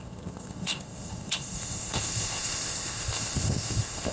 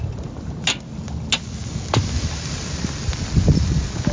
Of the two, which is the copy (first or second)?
first